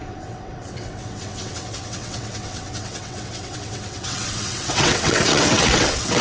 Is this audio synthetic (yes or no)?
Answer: yes